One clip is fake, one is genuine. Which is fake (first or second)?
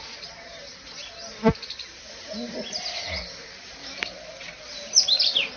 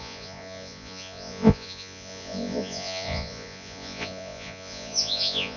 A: second